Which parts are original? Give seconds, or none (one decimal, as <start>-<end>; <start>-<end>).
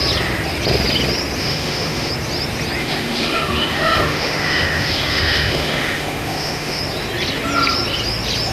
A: 0.0-1.4; 2.1-2.8; 6.8-8.5